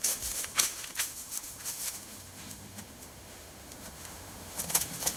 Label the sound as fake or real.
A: fake